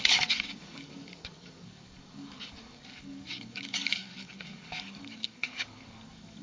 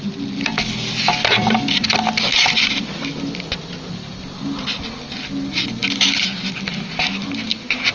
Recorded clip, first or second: second